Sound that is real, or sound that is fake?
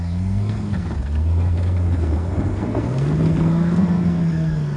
fake